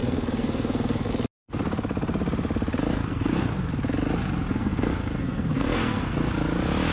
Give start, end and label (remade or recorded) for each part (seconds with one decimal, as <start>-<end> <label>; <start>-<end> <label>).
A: 0.0-1.1 remade; 1.1-3.0 recorded; 3.0-3.7 remade; 3.7-4.5 recorded; 4.5-6.3 remade; 6.3-6.9 recorded